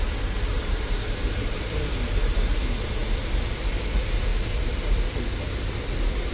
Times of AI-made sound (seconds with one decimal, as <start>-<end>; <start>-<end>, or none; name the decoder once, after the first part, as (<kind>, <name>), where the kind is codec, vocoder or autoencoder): 0.5-2.4 (vocoder, BigVGAN v2)